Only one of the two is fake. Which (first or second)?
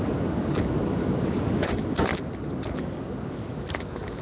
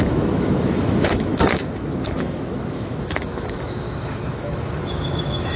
second